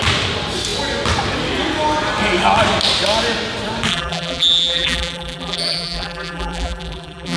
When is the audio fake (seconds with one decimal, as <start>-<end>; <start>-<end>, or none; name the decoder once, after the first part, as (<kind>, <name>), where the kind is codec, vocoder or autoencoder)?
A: 3.9-7.4 (vocoder, BigVGAN v2)